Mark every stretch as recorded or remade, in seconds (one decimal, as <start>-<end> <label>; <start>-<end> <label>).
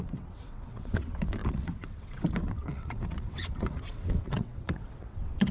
0.0-5.5 remade